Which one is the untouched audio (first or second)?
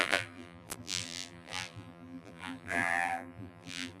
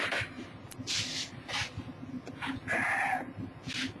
second